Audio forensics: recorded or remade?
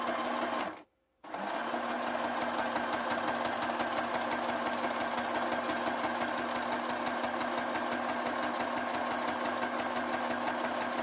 recorded